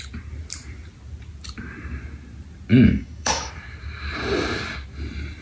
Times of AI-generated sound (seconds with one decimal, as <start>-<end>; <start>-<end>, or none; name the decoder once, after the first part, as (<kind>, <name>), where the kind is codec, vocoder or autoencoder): 2.7-3.5 (autoencoder, DAC-VAE)